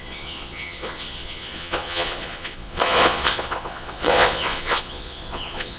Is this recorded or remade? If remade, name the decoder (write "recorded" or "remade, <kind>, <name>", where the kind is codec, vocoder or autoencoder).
remade, vocoder, Vocos